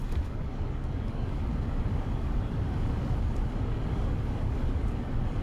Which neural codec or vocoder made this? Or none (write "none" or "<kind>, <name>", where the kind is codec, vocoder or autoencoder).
codec, DAC